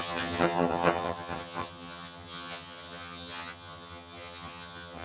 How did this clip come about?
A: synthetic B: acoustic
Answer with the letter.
A